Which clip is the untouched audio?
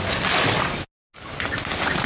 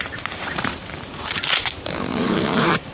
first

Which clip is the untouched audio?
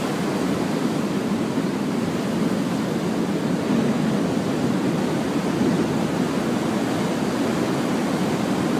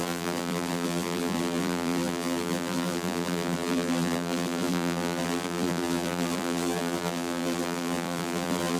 first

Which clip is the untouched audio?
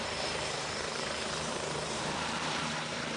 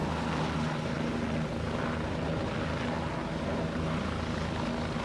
second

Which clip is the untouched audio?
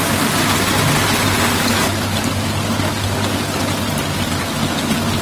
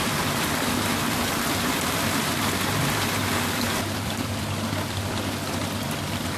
first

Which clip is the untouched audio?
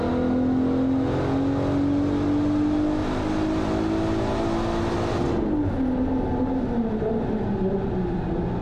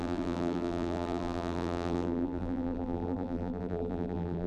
first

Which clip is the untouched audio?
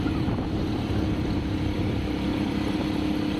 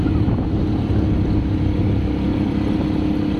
second